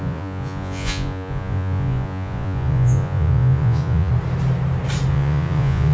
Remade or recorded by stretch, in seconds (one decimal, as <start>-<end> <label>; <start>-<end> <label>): 0.0-4.1 remade; 4.1-5.1 recorded; 5.1-5.9 remade

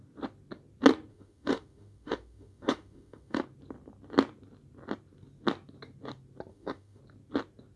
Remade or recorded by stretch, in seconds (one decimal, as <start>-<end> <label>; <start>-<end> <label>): 0.0-1.1 recorded; 1.1-3.4 remade; 3.4-6.5 recorded; 6.5-7.0 remade; 7.0-7.8 recorded

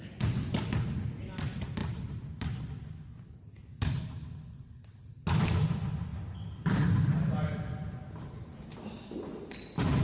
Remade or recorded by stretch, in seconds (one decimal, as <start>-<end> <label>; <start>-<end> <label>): 0.0-10.0 recorded

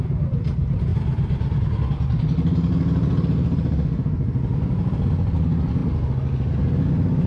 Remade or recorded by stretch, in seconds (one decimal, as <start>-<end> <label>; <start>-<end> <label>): 0.0-7.3 recorded

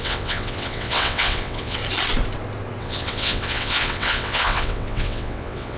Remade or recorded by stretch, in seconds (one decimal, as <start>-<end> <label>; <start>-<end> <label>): 0.0-1.8 remade; 1.8-2.8 recorded; 2.8-5.8 remade

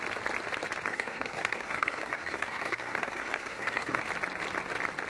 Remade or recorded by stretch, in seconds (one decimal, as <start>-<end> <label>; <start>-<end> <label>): 0.0-0.9 recorded; 0.9-4.0 remade; 4.0-5.1 recorded

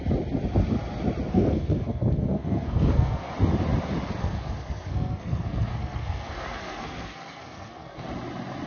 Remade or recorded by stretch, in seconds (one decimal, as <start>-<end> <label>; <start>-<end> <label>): 0.0-1.3 recorded; 1.3-3.3 remade; 3.3-4.2 recorded; 4.2-8.1 remade; 8.1-8.7 recorded